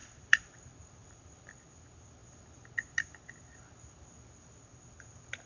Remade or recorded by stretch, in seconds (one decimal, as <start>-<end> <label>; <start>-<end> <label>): 0.0-0.6 remade; 0.6-1.0 recorded; 1.0-1.5 remade; 1.5-5.5 recorded